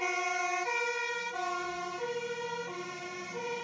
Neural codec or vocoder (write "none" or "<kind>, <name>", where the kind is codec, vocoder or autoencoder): none